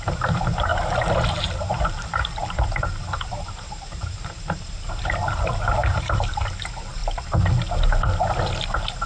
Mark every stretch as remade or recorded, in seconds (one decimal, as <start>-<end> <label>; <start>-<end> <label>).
0.0-0.7 remade; 0.7-1.3 recorded; 1.3-7.0 remade; 7.0-8.7 recorded; 8.7-9.1 remade